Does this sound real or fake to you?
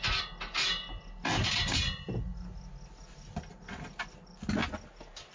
real